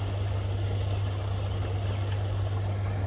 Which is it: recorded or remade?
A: recorded